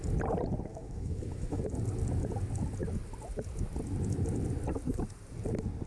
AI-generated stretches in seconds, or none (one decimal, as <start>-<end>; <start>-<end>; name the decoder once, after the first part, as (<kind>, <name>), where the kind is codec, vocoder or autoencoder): 0.7-1.6 (autoencoder, DAC-VAE)